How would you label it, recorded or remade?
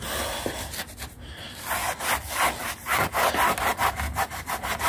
recorded